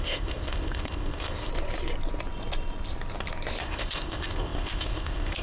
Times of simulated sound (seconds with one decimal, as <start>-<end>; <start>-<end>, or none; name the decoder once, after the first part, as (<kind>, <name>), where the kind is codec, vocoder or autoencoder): 0.0-1.5 (codec, ZipCodec); 3.6-5.4